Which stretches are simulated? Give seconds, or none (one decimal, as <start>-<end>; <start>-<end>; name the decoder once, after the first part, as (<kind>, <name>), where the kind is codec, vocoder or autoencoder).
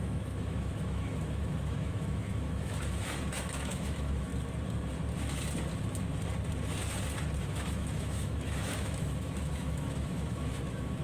0.0-4.3 (autoencoder, DAC-VAE); 7.4-11.0